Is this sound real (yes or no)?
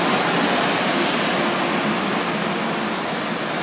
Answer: yes